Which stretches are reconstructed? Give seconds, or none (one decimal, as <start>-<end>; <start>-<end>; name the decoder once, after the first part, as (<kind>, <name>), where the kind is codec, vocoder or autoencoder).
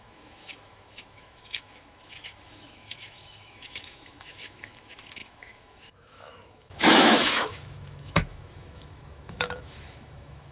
0.0-10.5 (autoencoder, DAC-VAE)